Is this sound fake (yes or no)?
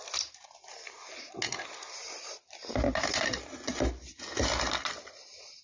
no